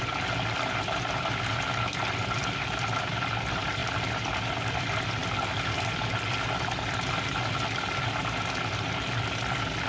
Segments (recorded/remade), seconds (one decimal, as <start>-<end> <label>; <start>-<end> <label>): 0.0-3.8 recorded; 3.8-4.8 remade; 4.8-5.2 recorded; 5.2-6.2 remade; 6.2-9.9 recorded